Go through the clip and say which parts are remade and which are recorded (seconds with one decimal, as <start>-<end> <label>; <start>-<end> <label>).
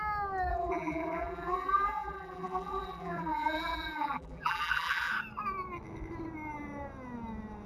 0.0-0.5 recorded; 0.5-5.1 remade; 5.1-7.7 recorded